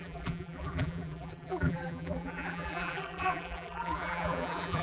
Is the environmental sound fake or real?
fake